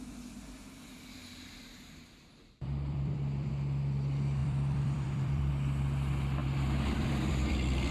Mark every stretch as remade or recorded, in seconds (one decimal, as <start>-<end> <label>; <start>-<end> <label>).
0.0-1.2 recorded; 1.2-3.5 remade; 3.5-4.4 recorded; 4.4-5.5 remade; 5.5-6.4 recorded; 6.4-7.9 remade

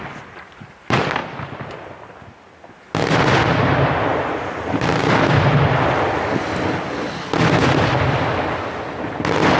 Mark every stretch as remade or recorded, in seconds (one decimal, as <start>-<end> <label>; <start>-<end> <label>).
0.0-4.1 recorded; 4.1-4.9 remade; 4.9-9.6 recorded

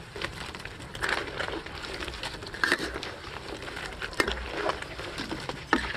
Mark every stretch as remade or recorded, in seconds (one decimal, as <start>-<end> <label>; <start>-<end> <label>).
0.0-6.0 recorded